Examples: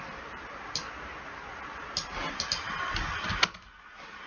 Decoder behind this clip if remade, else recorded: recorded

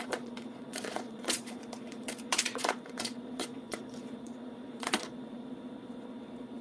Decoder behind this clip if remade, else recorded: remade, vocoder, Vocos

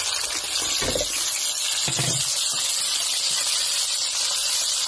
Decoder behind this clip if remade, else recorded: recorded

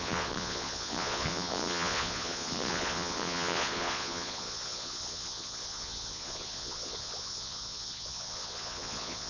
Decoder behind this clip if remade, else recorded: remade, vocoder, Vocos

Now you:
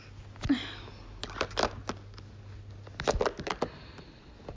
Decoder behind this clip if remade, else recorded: recorded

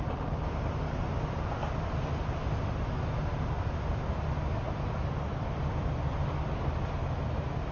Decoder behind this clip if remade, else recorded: recorded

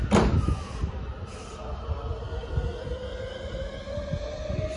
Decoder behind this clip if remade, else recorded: recorded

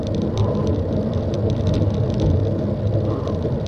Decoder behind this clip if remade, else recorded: recorded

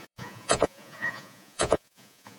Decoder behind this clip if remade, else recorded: remade, vocoder, Vocos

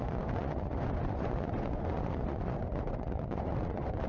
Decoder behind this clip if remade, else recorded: remade, vocoder, Vocos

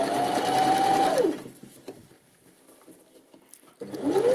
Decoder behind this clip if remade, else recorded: recorded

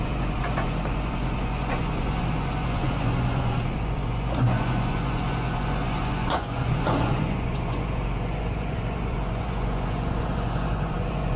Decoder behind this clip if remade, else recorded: remade, vocoder, Vocos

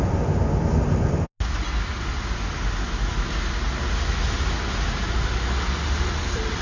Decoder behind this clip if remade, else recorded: recorded